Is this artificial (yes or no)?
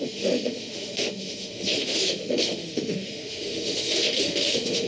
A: yes